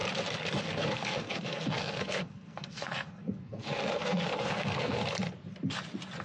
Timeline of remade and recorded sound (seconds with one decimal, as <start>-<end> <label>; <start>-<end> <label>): 0.0-0.6 recorded; 0.6-5.0 remade; 5.0-6.2 recorded